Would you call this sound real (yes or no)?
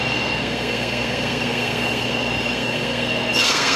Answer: no